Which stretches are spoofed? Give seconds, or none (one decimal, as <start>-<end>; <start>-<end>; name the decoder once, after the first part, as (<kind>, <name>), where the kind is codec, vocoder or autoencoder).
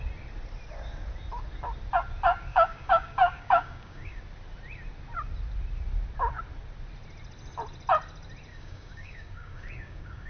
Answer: 2.5-4.2 (codec, DAC); 8.5-10.3